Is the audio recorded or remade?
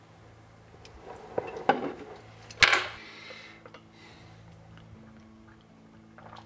recorded